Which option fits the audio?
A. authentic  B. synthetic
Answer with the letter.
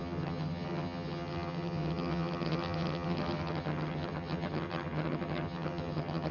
B